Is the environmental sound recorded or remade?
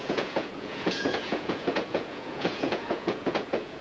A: remade